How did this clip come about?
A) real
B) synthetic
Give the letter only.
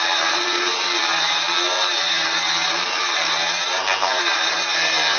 B